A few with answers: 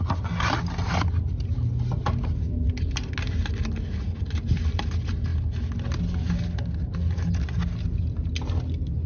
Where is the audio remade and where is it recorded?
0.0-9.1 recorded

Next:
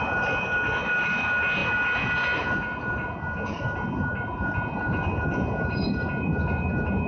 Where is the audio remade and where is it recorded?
0.0-4.1 recorded; 4.1-5.3 remade; 5.3-7.1 recorded